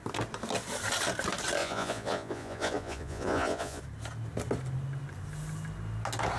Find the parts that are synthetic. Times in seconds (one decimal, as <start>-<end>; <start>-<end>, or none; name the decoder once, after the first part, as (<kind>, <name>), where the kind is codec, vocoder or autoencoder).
1.6-3.8 (vocoder, Vocos)